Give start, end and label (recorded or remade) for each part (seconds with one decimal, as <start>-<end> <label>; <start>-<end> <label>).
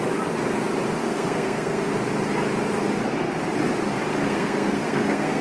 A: 0.0-1.0 recorded; 1.0-1.9 remade; 1.9-4.1 recorded; 4.1-5.4 remade